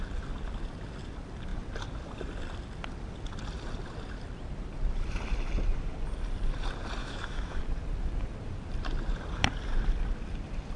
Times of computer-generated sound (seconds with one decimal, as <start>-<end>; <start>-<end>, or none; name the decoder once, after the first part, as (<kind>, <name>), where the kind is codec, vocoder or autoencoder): 7.0-7.6 (autoencoder, DAC-VAE)